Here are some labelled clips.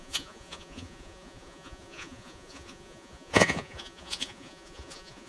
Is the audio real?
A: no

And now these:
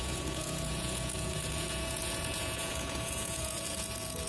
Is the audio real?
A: no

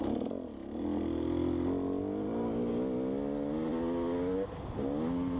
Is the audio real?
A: yes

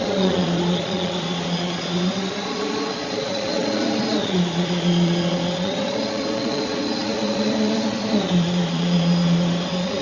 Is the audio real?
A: no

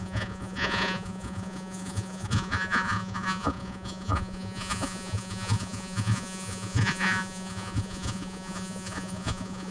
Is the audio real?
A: no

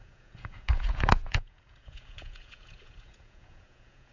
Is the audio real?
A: no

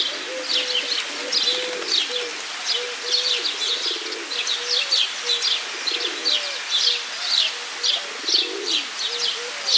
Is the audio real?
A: yes